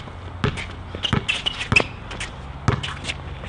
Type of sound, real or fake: real